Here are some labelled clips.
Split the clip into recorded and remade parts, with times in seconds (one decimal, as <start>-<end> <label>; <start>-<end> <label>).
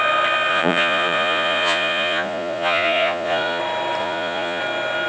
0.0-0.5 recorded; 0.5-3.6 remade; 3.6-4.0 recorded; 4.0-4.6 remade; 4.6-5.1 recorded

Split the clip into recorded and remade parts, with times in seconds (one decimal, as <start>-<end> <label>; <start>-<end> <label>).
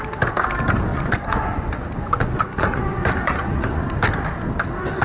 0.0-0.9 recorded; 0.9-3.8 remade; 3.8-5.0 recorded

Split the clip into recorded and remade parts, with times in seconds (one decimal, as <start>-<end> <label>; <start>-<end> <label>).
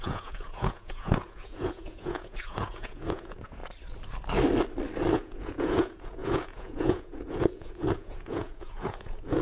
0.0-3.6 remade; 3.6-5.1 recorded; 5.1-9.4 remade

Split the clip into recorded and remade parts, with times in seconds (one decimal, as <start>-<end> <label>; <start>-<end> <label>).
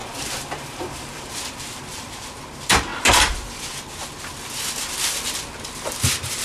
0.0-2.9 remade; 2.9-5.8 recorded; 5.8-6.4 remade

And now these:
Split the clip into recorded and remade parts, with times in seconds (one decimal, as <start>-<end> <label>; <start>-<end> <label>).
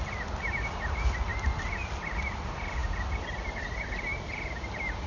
0.0-5.1 recorded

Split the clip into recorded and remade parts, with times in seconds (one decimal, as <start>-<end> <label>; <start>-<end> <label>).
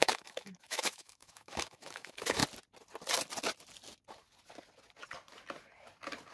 0.0-2.4 remade; 2.4-6.3 recorded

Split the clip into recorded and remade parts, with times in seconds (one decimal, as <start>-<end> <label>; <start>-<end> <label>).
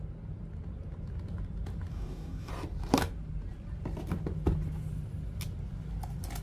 0.0-1.9 recorded; 1.9-2.5 remade; 2.5-6.4 recorded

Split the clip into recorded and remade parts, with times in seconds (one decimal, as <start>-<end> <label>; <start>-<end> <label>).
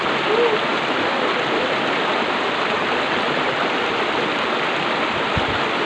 0.0-5.9 recorded